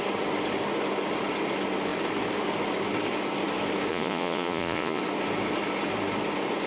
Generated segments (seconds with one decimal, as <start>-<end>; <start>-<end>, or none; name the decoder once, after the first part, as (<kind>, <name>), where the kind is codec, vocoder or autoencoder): 3.9-5.0 (vocoder, Vocos)